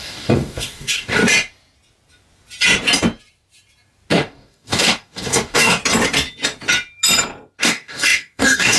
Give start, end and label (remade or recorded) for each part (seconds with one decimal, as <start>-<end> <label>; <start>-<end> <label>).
0.0-1.2 remade; 1.2-4.1 recorded; 4.1-5.8 remade; 5.8-7.6 recorded; 7.6-8.8 remade